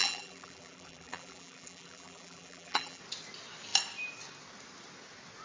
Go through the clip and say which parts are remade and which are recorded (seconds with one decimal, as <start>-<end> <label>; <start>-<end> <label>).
0.0-3.0 remade; 3.0-5.4 recorded